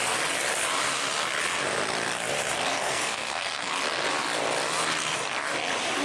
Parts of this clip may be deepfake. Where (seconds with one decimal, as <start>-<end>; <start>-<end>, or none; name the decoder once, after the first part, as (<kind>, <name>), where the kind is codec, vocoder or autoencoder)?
2.7-3.7 (codec, SNAC)